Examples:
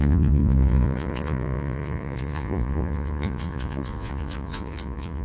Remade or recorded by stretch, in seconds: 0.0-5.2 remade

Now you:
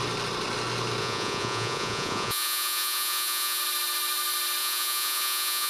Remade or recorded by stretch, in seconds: 0.0-1.0 recorded; 1.0-3.6 remade; 3.6-4.6 recorded; 4.6-5.7 remade